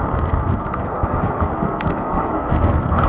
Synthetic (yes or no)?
yes